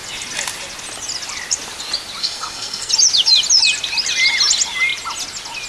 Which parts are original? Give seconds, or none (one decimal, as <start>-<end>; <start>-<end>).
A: 0.0-2.2; 2.9-5.7